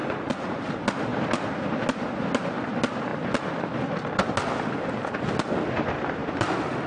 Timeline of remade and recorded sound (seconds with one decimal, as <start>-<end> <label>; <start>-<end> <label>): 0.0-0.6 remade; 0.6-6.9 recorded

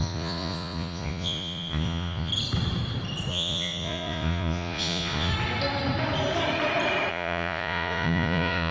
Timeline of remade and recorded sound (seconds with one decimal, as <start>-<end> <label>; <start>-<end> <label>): 0.0-2.3 remade; 2.3-3.3 recorded; 3.3-5.3 remade; 5.3-7.1 recorded; 7.1-8.7 remade

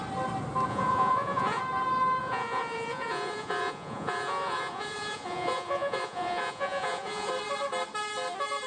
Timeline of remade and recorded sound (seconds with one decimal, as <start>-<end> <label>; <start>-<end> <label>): 0.0-0.7 recorded; 0.7-1.6 remade; 1.6-2.2 recorded; 2.2-7.3 remade; 7.3-8.7 recorded

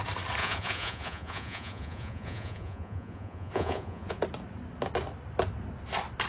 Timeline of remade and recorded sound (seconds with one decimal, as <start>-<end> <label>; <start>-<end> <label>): 0.0-0.4 recorded; 0.4-4.2 remade; 4.2-6.3 recorded

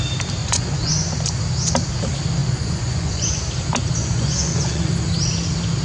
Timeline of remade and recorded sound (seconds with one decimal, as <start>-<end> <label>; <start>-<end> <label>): 0.0-0.4 recorded; 0.4-1.2 remade; 1.2-2.4 recorded; 2.4-3.4 remade; 3.4-4.0 recorded; 4.0-4.9 remade; 4.9-5.8 recorded

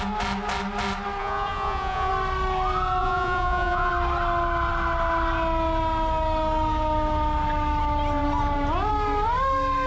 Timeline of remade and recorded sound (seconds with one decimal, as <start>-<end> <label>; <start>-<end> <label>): 0.0-1.2 recorded; 1.2-2.1 remade; 2.1-3.0 recorded; 3.0-3.9 remade; 3.9-9.9 recorded